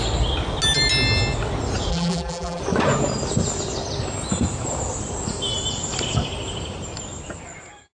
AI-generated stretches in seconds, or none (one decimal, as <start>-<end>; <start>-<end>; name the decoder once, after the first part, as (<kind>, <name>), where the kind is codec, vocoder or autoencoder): 1.9-2.6 (vocoder, BigVGAN v2)

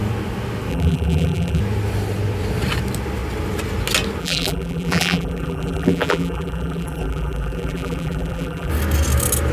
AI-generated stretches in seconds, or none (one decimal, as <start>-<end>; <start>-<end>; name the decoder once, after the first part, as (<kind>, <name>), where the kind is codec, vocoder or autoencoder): 0.7-1.6 (vocoder, BigVGAN v2); 4.2-8.7

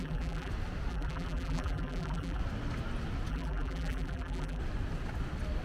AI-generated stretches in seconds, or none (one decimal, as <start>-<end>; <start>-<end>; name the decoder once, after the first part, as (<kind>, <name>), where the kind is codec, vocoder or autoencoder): 0.0-0.5 (vocoder, BigVGAN v2); 0.9-2.4; 3.3-4.6

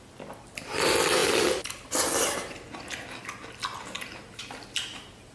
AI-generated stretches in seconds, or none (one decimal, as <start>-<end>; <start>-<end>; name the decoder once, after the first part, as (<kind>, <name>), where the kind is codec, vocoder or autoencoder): none

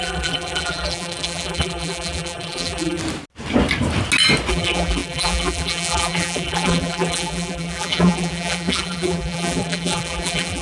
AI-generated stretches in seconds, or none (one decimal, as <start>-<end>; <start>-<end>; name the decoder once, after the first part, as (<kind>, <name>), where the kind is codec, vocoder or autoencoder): 0.0-3.0 (vocoder, BigVGAN v2); 4.5-10.6

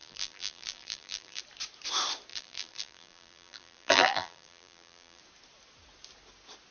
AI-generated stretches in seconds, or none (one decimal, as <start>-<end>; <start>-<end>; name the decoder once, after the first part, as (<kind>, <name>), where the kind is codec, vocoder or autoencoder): 0.0-1.4 (vocoder, BigVGAN v2); 2.3-5.2

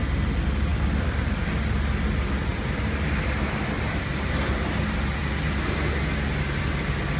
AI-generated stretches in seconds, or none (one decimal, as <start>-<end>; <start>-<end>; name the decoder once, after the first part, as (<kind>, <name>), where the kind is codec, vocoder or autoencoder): 0.7-1.5 (vocoder, BigVGAN v2); 2.5-4.1

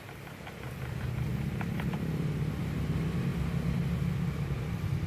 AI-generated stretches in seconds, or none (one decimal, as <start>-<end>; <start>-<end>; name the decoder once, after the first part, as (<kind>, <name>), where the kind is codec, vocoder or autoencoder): 1.3-2.6 (vocoder, BigVGAN v2)